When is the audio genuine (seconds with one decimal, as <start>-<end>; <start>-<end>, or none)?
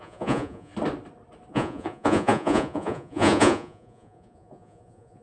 0.7-1.5